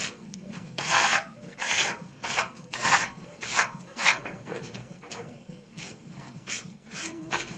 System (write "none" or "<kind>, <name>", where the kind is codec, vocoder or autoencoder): codec, SNAC